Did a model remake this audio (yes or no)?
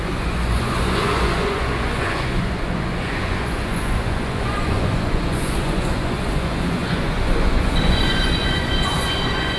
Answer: yes